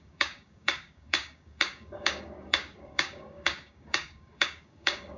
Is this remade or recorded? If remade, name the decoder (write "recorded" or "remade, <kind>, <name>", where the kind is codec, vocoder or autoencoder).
remade, codec, DAC